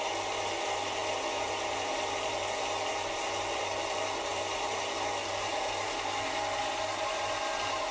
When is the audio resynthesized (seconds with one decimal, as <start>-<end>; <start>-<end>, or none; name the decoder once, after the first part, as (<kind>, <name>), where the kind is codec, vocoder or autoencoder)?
none